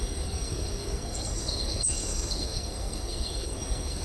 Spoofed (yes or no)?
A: yes